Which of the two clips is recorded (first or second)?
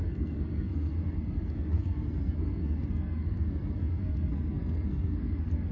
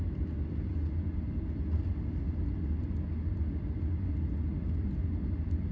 second